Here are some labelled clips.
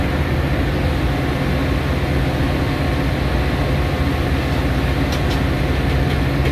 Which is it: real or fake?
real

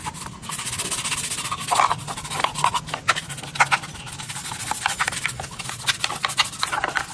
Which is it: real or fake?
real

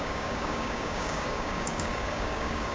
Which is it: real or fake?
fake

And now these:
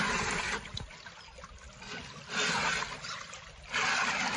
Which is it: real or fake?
real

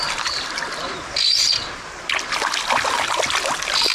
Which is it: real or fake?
real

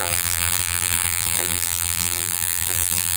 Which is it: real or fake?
fake